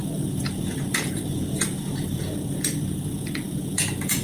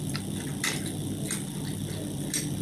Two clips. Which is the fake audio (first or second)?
first